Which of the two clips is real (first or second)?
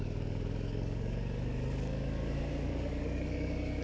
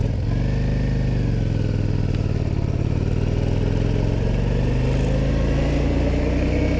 second